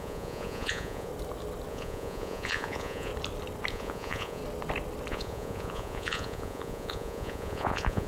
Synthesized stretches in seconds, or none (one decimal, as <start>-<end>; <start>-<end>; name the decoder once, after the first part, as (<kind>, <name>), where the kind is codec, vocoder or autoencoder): 0.0-1.1 (vocoder, Vocos); 1.7-3.1; 3.7-4.4; 5.1-8.1